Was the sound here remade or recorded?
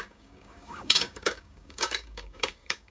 remade